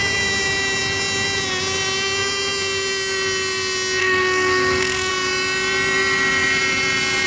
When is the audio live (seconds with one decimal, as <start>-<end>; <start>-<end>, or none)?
0.0-4.0; 5.1-7.3